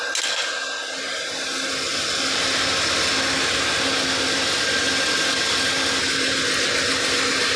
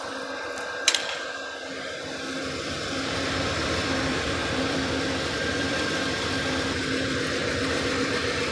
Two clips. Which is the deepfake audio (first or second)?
second